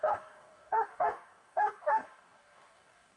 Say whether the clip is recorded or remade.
remade